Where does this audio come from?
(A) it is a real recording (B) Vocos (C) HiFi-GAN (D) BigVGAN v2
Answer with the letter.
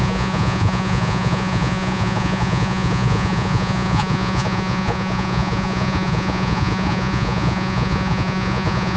B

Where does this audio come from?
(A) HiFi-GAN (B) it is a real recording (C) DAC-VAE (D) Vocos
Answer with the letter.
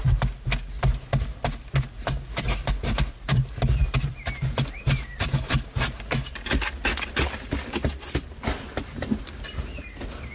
B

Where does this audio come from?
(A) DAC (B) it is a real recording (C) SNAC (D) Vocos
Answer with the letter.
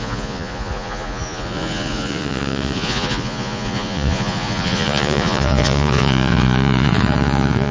D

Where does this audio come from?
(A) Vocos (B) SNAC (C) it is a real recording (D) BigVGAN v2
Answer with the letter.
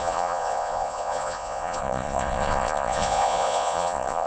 A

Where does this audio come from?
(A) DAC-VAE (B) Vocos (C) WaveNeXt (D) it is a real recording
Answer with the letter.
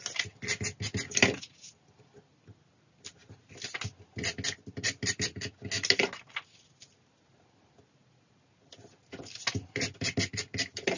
D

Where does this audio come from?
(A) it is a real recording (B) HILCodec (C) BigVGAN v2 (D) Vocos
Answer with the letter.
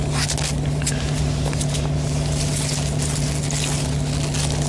A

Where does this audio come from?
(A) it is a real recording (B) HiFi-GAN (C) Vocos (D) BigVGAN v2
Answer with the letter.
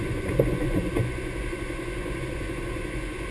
C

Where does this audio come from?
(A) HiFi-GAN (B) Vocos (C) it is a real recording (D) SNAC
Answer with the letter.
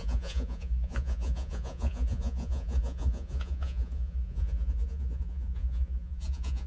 B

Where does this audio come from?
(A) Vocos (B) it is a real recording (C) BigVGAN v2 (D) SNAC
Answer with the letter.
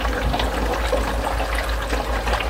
B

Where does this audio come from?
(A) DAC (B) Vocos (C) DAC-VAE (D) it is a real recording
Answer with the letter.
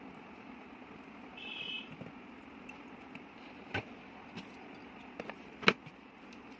D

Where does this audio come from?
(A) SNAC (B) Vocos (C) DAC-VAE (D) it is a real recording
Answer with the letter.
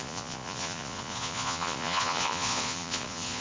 B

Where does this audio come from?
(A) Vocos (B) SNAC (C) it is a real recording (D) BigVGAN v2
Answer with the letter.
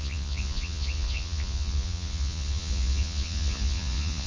A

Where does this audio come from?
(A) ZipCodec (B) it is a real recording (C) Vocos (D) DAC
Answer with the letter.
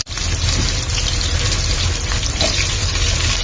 B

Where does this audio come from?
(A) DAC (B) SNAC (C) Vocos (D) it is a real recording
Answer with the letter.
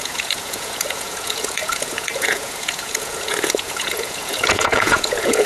C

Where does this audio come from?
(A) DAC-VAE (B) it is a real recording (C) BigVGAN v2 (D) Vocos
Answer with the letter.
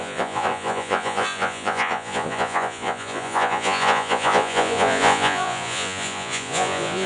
D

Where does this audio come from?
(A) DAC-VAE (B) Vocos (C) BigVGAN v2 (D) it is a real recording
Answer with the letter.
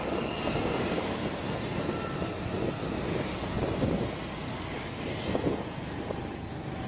D